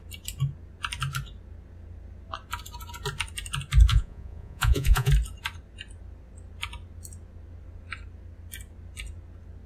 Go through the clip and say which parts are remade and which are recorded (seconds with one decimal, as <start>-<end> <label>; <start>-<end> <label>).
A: 0.0-3.9 recorded; 3.9-5.1 remade; 5.1-9.7 recorded